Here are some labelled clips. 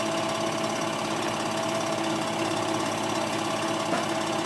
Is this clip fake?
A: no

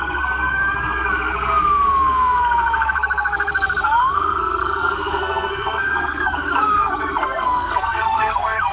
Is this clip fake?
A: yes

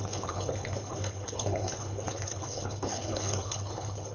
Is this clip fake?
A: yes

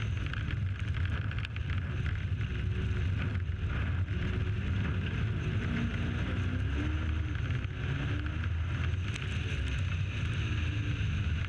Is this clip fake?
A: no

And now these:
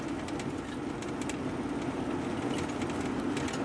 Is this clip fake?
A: no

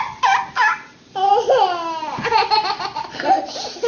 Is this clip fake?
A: no